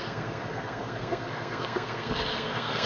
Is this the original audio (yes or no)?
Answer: no